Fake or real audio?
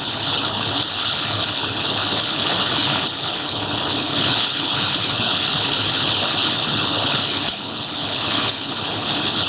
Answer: fake